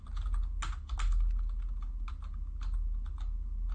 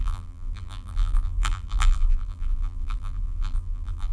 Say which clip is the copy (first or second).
second